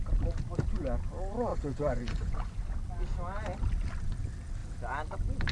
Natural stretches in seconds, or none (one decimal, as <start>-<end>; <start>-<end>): 0.0-1.5; 2.6-5.5